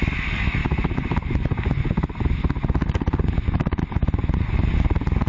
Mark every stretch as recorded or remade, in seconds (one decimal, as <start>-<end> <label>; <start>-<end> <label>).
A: 0.0-5.3 recorded